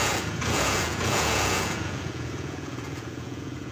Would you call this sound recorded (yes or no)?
no